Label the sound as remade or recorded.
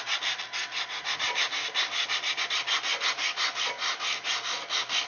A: recorded